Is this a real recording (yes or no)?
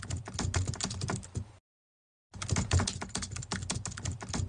yes